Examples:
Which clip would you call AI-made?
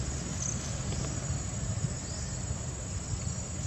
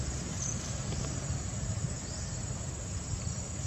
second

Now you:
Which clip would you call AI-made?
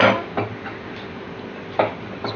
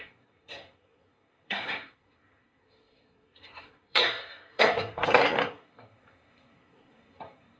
second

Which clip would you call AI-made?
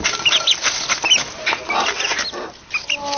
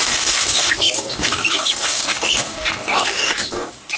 second